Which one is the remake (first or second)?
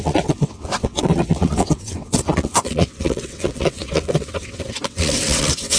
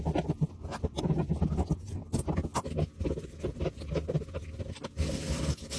first